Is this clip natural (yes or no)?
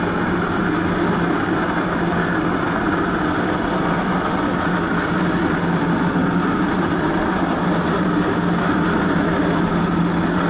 yes